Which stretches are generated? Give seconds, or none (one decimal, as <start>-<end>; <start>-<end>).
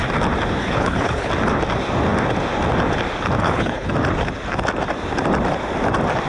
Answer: 0.6-1.3; 3.4-3.9